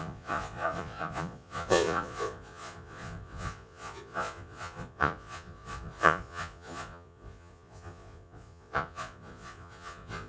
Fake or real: fake